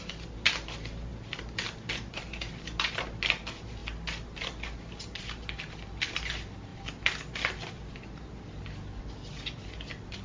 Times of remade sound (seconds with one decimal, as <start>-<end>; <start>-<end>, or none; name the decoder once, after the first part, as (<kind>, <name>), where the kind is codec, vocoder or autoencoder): none